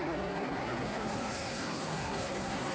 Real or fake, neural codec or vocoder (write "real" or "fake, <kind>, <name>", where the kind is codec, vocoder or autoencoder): fake, codec, SNAC